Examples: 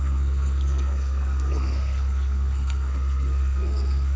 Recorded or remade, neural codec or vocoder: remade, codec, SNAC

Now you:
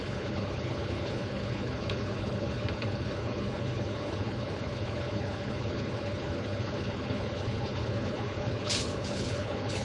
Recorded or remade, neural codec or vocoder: remade, codec, HILCodec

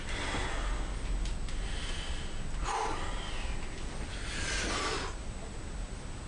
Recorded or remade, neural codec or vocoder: recorded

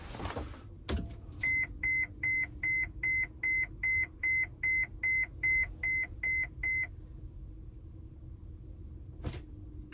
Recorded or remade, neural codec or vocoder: recorded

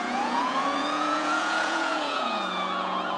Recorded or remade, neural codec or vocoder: remade, vocoder, Vocos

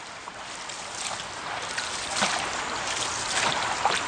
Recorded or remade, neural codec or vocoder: recorded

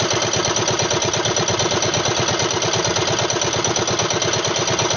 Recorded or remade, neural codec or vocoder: recorded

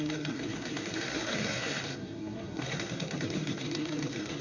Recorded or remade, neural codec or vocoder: remade, codec, SNAC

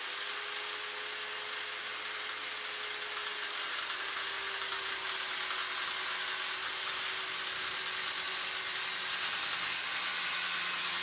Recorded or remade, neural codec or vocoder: recorded